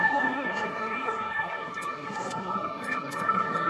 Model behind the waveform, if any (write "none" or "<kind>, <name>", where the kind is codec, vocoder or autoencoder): codec, SNAC